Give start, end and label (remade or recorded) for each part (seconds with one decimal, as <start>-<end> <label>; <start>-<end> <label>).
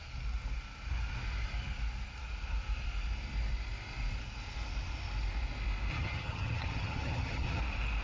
0.0-5.9 recorded; 5.9-7.6 remade; 7.6-8.0 recorded